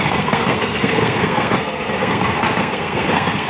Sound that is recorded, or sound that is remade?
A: remade